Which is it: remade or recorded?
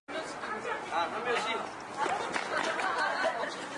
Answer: recorded